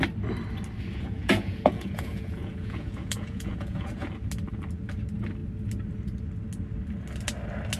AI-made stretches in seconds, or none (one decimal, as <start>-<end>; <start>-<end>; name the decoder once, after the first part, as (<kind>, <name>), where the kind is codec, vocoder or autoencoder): 0.9-4.1 (vocoder, Vocos)